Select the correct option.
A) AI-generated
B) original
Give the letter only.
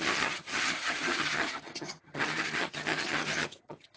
A